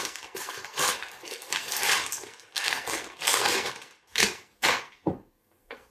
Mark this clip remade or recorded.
remade